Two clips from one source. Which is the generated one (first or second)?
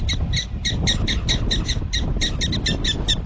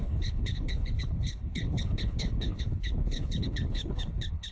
second